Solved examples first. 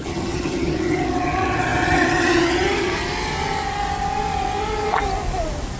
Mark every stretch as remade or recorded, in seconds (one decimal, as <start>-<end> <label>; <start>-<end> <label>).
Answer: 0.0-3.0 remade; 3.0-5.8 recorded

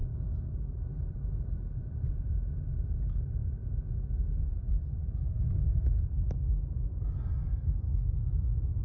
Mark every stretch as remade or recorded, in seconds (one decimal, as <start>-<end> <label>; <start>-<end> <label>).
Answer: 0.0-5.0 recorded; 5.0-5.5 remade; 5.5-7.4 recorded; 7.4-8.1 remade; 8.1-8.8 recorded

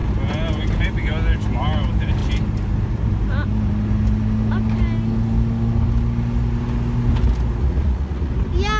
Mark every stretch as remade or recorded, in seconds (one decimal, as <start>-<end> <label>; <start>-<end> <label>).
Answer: 0.0-7.6 recorded; 7.6-8.3 remade; 8.3-8.8 recorded

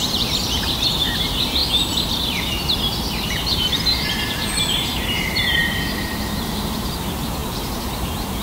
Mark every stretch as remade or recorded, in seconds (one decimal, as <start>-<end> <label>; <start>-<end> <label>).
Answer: 0.0-1.6 remade; 1.6-3.3 recorded; 3.3-5.6 remade; 5.6-6.2 recorded; 6.2-8.4 remade

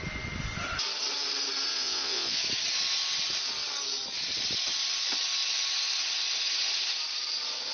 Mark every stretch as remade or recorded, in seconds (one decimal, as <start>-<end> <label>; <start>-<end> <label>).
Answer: 0.0-1.7 recorded; 1.7-2.4 remade; 2.4-7.7 recorded

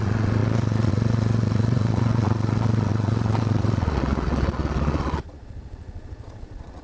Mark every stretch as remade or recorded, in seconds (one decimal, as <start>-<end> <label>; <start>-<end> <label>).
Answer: 0.0-6.8 remade

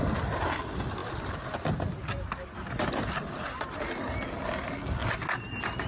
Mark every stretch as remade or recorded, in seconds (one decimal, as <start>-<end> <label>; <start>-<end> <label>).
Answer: 0.0-5.9 recorded